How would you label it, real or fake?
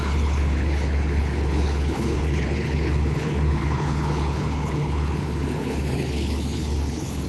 fake